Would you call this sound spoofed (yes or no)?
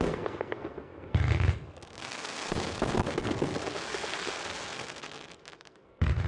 yes